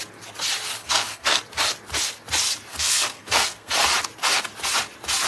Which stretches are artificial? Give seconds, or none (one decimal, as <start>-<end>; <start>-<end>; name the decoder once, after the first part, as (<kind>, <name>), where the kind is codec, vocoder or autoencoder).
0.8-1.4 (codec, SNAC); 2.7-3.7